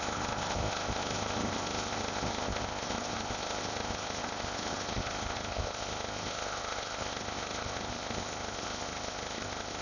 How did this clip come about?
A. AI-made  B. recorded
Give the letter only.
A